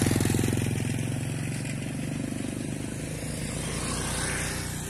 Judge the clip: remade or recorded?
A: recorded